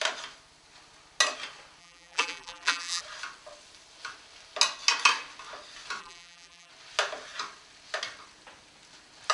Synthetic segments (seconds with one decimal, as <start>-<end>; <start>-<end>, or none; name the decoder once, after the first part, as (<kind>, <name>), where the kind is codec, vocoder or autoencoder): 1.8-3.0 (vocoder, BigVGAN v2); 6.0-6.7